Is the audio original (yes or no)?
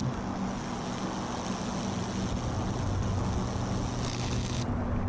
yes